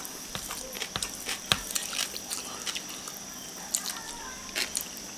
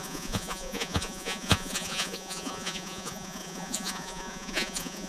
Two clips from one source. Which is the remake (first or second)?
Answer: second